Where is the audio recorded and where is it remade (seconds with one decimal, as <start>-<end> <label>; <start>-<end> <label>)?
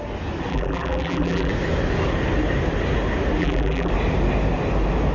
0.0-0.5 recorded; 0.5-1.5 remade; 1.5-3.4 recorded; 3.4-3.9 remade; 3.9-5.1 recorded